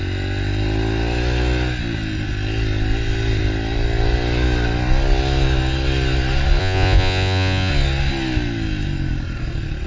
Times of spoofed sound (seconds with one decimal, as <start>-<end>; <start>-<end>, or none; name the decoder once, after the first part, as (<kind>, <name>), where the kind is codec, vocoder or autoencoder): 6.6-7.7 (vocoder, Vocos)